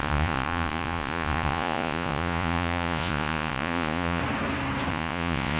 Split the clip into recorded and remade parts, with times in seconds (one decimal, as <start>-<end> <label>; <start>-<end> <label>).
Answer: 0.0-4.2 remade; 4.2-4.9 recorded; 4.9-5.6 remade